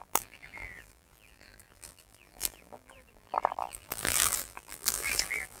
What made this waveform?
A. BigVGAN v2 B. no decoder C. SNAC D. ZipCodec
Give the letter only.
A